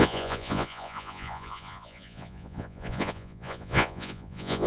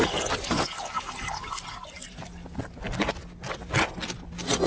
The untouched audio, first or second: second